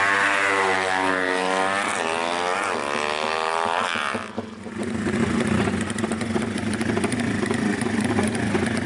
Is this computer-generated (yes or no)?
no